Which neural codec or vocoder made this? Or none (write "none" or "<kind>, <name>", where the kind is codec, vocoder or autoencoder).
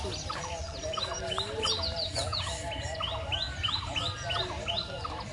none